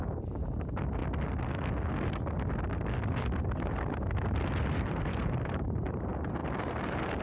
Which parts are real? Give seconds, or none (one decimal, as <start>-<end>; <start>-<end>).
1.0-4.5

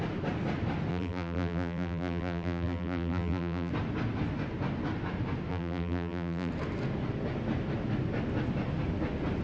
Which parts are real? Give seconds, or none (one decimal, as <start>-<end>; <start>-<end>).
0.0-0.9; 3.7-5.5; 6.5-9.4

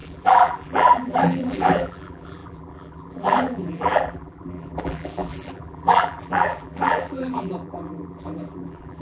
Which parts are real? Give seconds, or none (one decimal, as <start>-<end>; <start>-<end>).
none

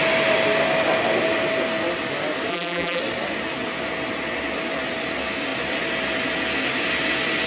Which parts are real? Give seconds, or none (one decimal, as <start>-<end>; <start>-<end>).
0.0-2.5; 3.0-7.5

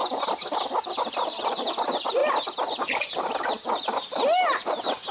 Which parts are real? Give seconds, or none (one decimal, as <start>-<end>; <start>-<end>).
0.0-0.8

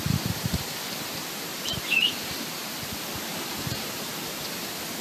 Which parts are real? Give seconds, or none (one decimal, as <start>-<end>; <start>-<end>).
0.0-1.5; 4.4-5.0